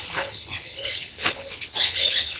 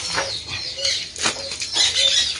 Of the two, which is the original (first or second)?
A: second